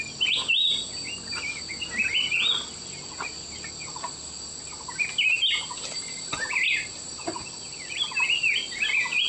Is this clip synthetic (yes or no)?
no